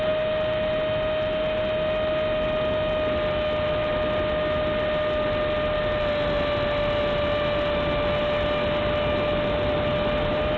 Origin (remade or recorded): recorded